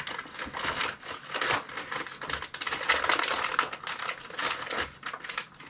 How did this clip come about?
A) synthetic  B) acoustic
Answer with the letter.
B